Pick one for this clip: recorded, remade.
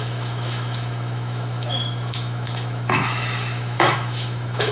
remade